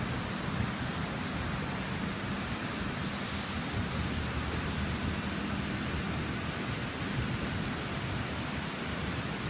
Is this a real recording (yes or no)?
yes